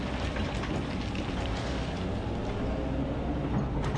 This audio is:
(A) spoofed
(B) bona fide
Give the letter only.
B